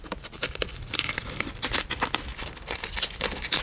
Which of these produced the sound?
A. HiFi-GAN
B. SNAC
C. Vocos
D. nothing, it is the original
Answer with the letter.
D